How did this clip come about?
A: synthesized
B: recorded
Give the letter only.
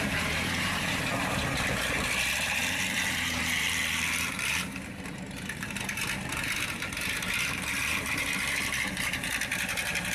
A